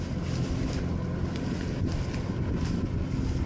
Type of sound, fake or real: real